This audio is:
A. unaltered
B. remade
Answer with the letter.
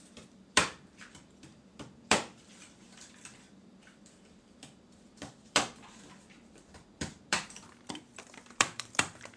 B